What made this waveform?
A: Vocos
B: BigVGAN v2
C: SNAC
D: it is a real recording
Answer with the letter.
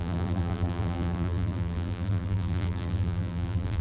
B